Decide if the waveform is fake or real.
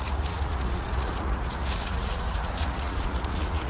fake